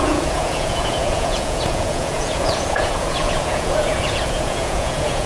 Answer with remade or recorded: remade